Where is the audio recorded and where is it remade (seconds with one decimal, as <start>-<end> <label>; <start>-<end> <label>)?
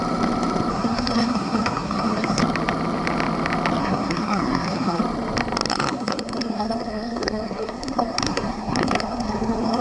0.0-0.7 recorded; 0.7-2.4 remade; 2.4-3.8 recorded; 3.8-5.0 remade; 5.0-5.7 recorded; 5.7-9.8 remade